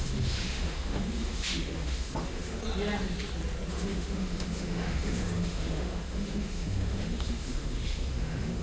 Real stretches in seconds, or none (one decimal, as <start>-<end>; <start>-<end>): 2.6-3.7